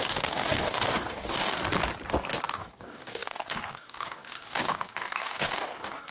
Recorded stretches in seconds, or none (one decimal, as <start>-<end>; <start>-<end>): 1.6-2.5